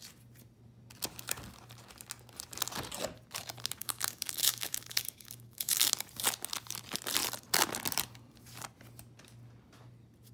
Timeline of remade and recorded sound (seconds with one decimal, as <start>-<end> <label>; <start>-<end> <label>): 0.0-3.8 recorded; 3.8-5.9 remade; 5.9-10.3 recorded